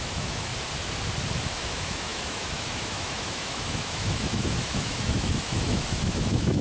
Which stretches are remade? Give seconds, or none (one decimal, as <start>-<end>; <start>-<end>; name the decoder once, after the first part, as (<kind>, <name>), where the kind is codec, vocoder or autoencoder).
0.0-0.5 (autoencoder, DAC-VAE); 1.4-6.6